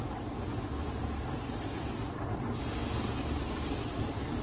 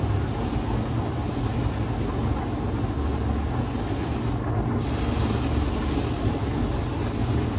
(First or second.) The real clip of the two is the second